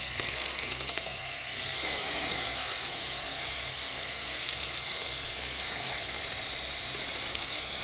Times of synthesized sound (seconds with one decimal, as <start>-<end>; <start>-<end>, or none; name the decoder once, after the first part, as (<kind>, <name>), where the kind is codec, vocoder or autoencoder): 0.0-6.2 (codec, SNAC); 7.3-7.8